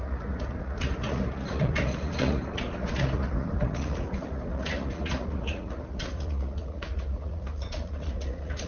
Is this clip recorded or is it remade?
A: remade